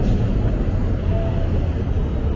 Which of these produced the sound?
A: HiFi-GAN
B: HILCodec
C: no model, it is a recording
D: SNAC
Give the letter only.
C